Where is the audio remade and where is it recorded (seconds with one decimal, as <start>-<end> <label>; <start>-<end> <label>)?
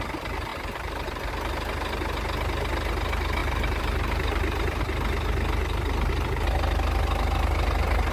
0.0-0.5 recorded; 0.5-1.3 remade; 1.3-3.4 recorded; 3.4-4.8 remade; 4.8-5.6 recorded; 5.6-6.1 remade; 6.1-8.1 recorded